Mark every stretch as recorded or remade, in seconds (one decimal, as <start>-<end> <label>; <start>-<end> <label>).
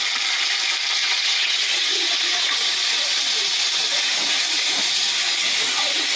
0.0-1.0 recorded; 1.0-4.7 remade; 4.7-5.2 recorded; 5.2-6.2 remade